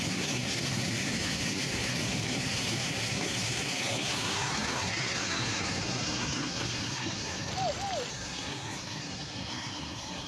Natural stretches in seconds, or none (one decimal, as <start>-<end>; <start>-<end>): 7.5-8.1